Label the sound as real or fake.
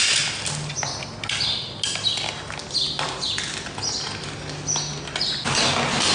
real